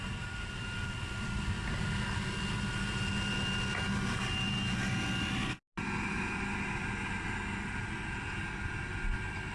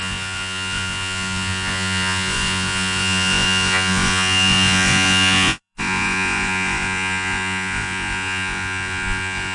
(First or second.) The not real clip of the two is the second